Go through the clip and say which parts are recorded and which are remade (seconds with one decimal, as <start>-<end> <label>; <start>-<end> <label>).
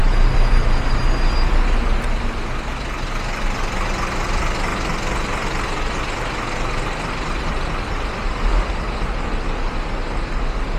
0.0-1.0 remade; 1.0-10.8 recorded